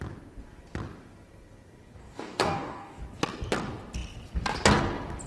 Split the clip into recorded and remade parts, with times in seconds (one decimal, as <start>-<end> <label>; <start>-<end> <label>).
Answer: 0.0-2.0 recorded; 2.0-3.0 remade; 3.0-5.3 recorded